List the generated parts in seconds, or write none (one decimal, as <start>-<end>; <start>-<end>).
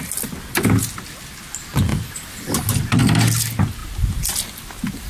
none